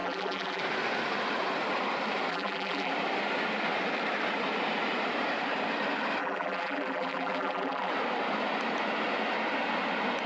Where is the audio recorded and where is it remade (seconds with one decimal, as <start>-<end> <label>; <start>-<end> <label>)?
0.0-0.6 remade; 0.6-2.3 recorded; 2.3-2.9 remade; 2.9-6.2 recorded; 6.2-7.9 remade; 7.9-10.3 recorded